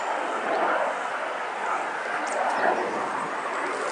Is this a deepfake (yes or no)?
no